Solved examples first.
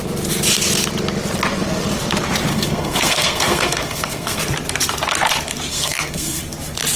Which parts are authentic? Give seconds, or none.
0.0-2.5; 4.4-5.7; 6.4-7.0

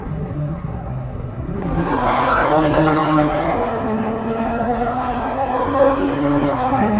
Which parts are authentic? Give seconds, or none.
none

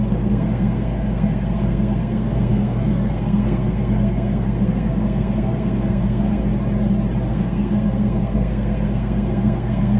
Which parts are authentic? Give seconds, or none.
6.4-7.3

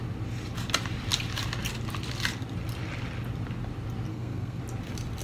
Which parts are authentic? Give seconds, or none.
0.0-4.1; 4.6-5.2

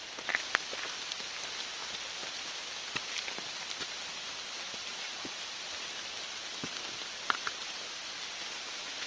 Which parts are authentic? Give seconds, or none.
0.0-9.1